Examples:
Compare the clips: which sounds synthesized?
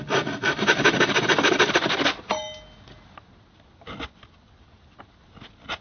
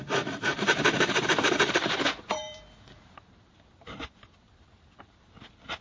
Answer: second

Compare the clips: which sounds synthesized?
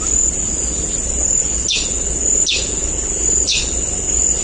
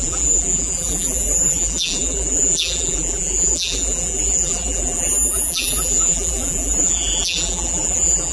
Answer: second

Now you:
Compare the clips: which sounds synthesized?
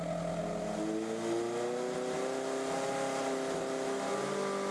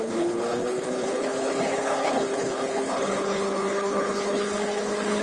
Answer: second